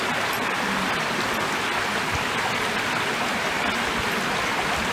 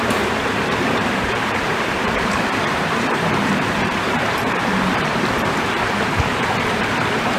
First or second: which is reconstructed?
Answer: second